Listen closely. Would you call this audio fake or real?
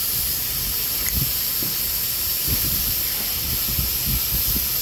real